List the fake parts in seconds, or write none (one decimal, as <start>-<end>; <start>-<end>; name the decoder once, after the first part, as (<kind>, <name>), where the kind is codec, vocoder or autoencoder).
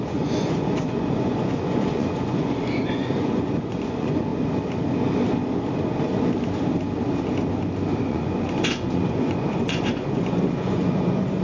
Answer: 0.0-4.3 (vocoder, Vocos); 8.1-11.4